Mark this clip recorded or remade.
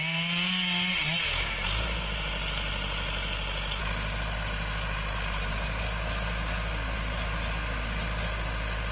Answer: recorded